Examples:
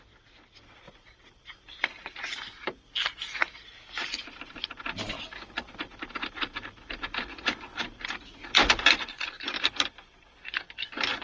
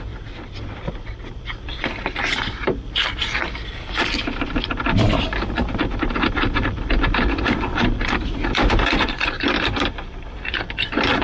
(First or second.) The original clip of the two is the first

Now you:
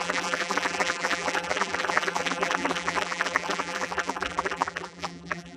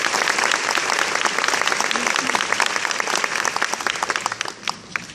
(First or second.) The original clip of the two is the second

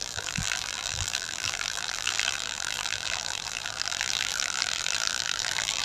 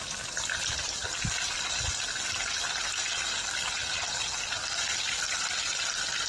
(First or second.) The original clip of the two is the second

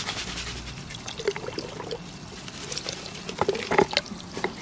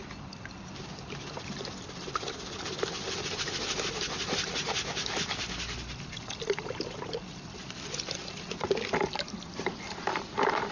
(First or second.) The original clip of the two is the first